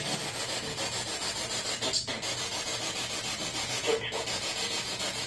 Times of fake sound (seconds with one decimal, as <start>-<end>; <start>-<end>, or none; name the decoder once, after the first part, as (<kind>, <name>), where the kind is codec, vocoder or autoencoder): 3.5-5.3 (vocoder, Vocos)